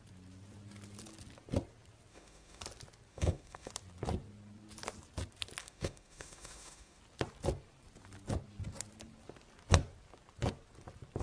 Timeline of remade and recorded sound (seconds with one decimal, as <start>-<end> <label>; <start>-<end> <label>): 0.0-2.1 recorded; 2.1-2.6 remade; 2.6-3.1 recorded; 3.1-3.7 remade; 3.7-5.6 recorded; 5.6-7.0 remade; 7.0-11.2 recorded